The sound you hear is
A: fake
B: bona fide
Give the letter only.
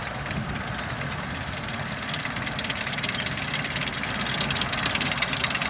B